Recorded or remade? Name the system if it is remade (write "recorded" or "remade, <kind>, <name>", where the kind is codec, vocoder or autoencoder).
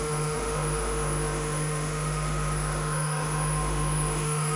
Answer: remade, autoencoder, DAC-VAE